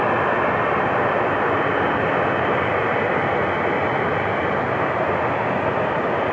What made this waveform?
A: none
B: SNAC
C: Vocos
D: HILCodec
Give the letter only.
A